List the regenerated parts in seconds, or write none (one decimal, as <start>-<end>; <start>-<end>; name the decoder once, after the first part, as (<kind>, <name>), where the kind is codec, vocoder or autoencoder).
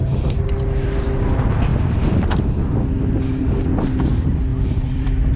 4.5-5.4 (vocoder, BigVGAN v2)